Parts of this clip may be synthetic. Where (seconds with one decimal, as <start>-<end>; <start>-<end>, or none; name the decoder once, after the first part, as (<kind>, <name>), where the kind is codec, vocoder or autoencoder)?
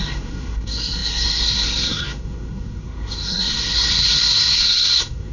0.0-5.3 (codec, SNAC)